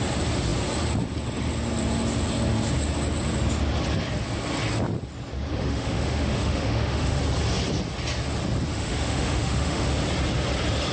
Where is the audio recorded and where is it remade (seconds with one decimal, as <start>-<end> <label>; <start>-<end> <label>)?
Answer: 0.0-5.5 recorded; 5.5-7.2 remade; 7.2-8.7 recorded; 8.7-9.9 remade; 9.9-10.9 recorded